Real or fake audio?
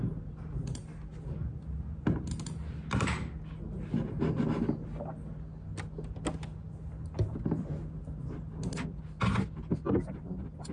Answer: real